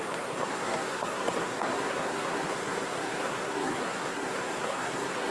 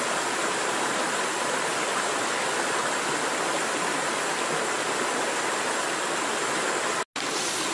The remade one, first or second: first